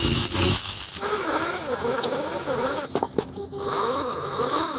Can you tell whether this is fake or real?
fake